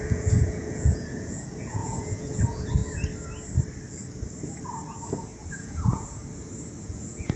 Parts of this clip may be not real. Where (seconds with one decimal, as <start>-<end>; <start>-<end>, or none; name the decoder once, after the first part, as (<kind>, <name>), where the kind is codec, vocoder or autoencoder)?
0.0-2.8 (vocoder, Vocos); 5.5-6.2; 6.8-7.4